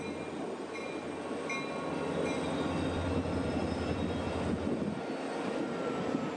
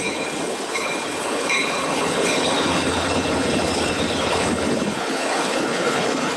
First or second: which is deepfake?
second